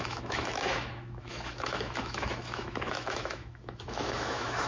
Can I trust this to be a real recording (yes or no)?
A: no